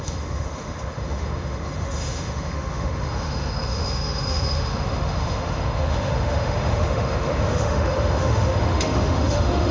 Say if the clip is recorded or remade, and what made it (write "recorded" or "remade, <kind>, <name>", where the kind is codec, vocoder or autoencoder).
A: remade, autoencoder, DAC-VAE